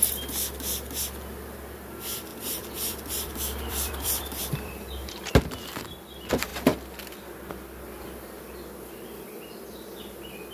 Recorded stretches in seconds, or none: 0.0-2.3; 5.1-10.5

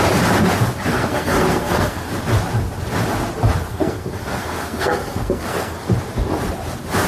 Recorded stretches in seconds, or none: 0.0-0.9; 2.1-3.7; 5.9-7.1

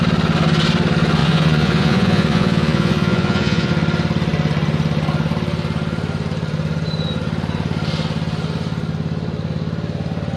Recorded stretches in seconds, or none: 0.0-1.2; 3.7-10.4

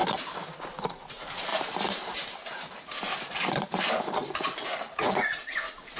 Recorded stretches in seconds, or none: 0.0-0.6; 1.5-5.0

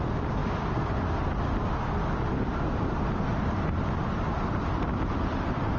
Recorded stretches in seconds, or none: 0.0-5.8